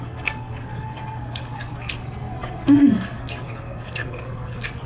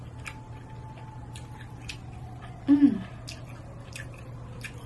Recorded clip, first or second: second